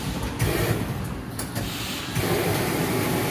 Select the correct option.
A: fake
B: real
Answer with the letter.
A